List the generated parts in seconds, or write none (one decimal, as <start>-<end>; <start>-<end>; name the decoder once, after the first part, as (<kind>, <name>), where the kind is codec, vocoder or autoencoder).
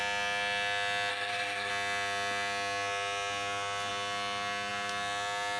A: 1.1-1.7 (codec, SNAC)